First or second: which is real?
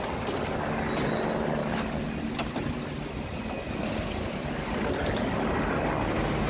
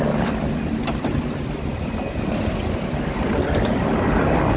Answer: first